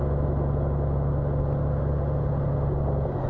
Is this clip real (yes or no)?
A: yes